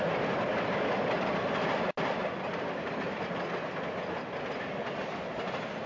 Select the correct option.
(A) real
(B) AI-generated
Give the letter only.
A